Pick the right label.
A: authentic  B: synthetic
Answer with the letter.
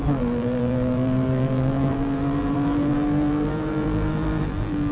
B